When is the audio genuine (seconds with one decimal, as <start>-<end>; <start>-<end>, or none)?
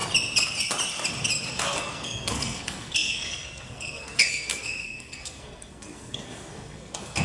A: 0.0-1.5